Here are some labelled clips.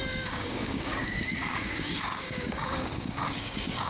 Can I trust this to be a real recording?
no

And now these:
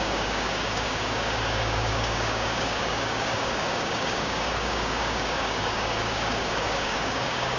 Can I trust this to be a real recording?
no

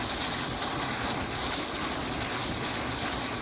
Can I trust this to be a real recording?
yes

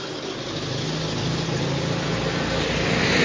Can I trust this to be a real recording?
yes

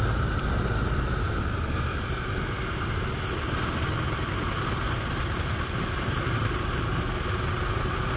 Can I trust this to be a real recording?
yes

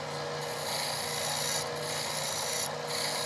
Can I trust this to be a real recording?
yes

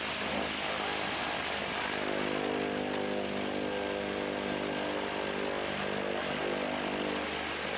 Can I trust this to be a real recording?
yes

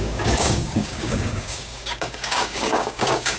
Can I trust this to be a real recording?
no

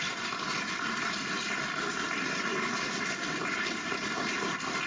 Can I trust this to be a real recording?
yes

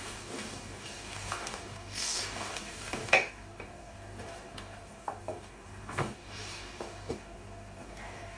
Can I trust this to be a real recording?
no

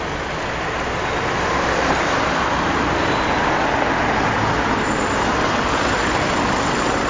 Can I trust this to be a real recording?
yes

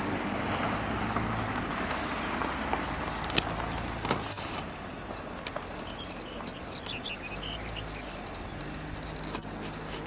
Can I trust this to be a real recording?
yes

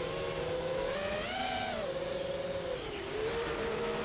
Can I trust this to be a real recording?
yes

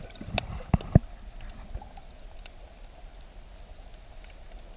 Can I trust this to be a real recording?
yes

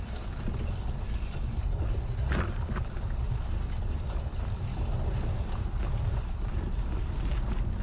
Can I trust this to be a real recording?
yes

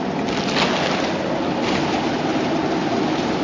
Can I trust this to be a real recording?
yes